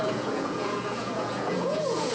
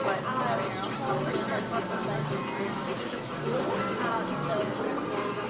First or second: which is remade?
first